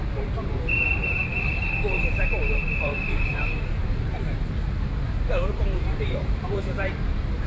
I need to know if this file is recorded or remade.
remade